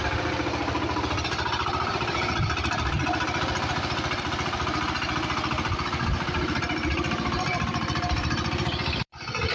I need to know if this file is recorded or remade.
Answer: remade